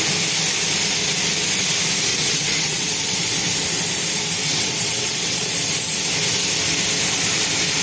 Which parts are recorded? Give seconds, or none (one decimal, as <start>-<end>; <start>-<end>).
0.0-2.1; 2.9-4.4; 5.5-7.8